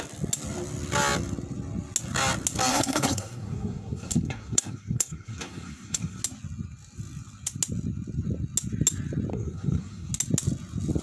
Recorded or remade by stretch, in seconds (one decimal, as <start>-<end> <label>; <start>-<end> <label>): 0.0-2.7 recorded; 2.7-6.2 remade; 6.2-9.3 recorded; 9.3-10.1 remade; 10.1-11.0 recorded